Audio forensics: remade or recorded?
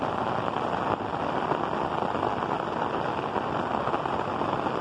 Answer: recorded